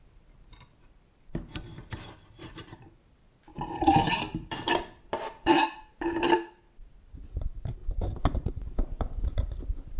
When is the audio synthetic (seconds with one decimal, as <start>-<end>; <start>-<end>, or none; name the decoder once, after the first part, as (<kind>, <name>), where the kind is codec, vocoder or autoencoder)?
3.5-7.0 (vocoder, BigVGAN v2); 7.8-9.3